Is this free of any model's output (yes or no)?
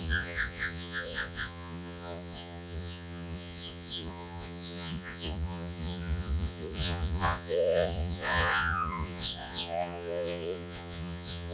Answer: no